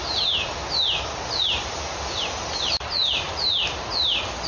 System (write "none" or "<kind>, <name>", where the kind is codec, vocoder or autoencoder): none